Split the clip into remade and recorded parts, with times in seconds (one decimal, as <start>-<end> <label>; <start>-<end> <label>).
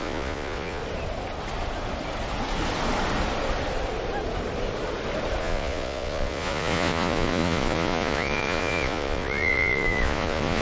0.0-0.8 remade; 0.8-5.4 recorded; 5.4-10.6 remade